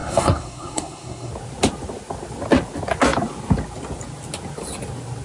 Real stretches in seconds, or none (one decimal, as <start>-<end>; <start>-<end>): 1.3-5.2